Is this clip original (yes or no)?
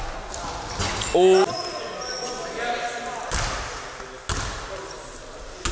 yes